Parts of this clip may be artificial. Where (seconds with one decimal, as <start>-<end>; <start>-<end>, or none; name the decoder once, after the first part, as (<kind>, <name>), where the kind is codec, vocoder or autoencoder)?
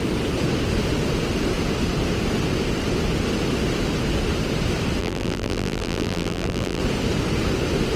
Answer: 5.0-6.8 (vocoder, BigVGAN v2)